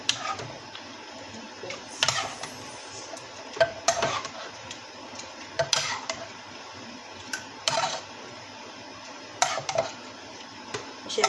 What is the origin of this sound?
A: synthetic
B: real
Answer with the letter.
A